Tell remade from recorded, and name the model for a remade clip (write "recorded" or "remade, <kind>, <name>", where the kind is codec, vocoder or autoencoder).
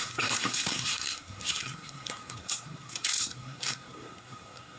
remade, codec, SNAC